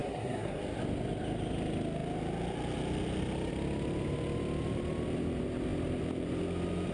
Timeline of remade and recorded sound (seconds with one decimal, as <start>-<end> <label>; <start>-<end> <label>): 0.0-0.6 remade; 0.6-6.9 recorded